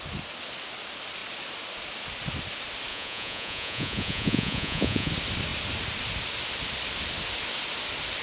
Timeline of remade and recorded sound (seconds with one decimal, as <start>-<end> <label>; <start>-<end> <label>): 0.0-2.9 recorded; 2.9-5.1 remade; 5.1-8.2 recorded